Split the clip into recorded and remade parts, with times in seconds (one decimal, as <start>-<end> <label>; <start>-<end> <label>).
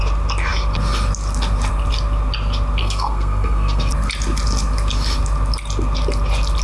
0.0-2.8 recorded; 2.8-3.9 remade; 3.9-6.6 recorded